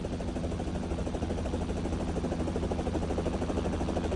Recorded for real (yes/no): yes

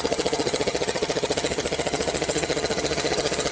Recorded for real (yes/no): no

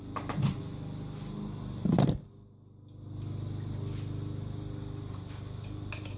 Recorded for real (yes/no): yes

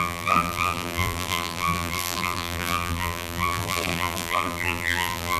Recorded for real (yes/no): no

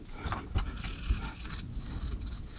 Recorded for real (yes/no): yes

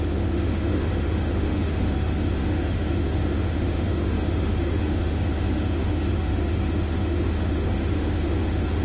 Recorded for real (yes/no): no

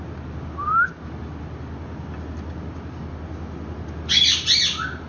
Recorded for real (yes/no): yes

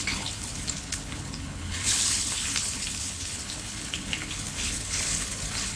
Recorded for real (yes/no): no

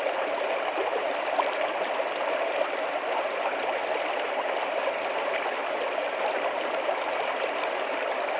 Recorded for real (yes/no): yes